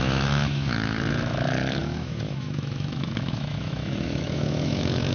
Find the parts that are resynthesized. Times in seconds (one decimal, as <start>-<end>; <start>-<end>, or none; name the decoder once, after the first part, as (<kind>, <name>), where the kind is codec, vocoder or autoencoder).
0.0-5.1 (autoencoder, DAC-VAE)